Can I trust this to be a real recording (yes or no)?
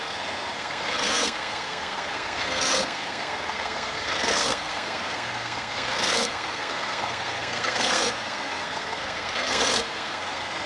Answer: no